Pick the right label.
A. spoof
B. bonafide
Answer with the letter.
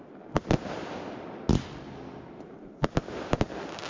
B